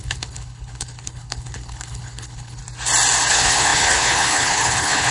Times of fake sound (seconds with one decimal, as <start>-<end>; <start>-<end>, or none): 0.0-2.6; 3.3-5.1